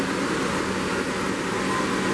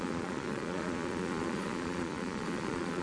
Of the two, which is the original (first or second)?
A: first